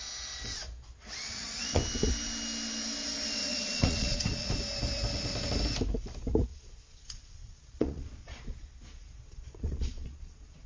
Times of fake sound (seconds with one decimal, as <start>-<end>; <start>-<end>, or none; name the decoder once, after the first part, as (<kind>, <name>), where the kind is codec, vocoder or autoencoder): 1.2-1.8 (vocoder, Vocos); 3.4-4.5; 6.5-10.7